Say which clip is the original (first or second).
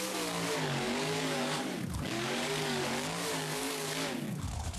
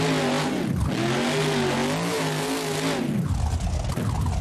second